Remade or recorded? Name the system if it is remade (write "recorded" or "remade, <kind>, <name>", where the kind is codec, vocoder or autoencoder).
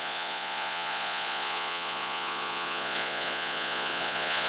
remade, vocoder, Vocos